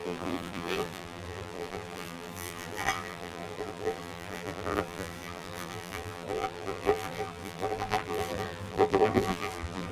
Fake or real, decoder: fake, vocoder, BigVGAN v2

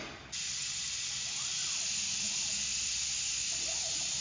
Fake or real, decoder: real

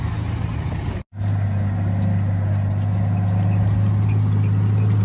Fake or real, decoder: real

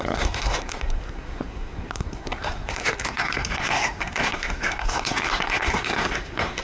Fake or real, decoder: fake, codec, SNAC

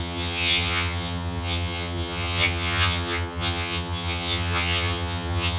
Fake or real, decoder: fake, vocoder, HiFi-GAN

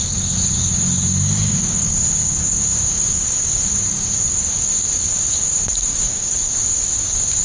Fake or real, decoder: fake, codec, DAC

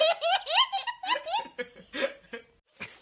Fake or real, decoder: real